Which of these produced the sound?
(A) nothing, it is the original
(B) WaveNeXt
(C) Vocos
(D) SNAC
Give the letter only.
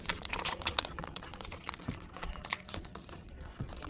C